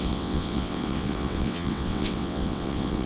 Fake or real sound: fake